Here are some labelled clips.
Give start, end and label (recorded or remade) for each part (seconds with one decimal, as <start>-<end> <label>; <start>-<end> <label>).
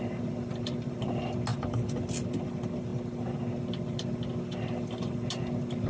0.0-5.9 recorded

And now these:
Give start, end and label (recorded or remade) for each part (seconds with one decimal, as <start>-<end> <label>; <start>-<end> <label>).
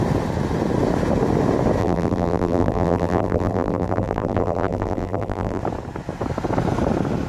0.0-1.8 recorded; 1.8-5.6 remade; 5.6-7.3 recorded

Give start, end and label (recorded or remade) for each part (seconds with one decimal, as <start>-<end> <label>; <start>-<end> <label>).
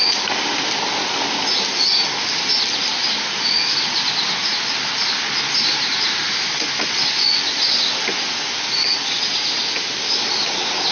0.0-10.9 recorded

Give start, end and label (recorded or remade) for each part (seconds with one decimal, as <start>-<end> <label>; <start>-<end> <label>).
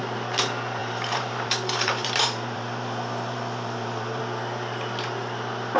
0.0-0.8 recorded; 0.8-4.2 remade; 4.2-5.8 recorded